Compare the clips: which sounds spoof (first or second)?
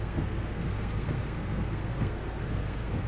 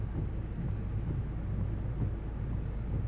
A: first